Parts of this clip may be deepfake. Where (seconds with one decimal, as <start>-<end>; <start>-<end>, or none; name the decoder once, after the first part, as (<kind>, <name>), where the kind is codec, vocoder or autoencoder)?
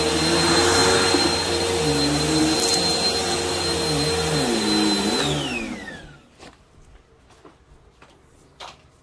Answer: none